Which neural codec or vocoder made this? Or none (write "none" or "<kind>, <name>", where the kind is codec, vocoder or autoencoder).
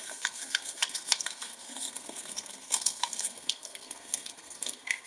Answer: codec, SNAC